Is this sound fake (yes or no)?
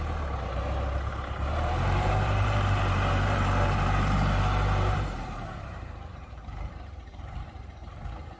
yes